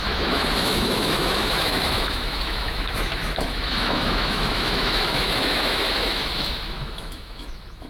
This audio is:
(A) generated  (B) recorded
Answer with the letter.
A